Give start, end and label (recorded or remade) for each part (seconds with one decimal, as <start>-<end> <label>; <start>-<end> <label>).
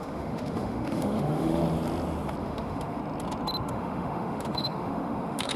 0.0-1.6 remade; 1.6-2.4 recorded; 2.4-3.0 remade; 3.0-3.7 recorded; 3.7-5.6 remade